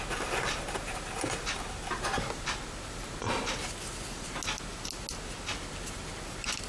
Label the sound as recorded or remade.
recorded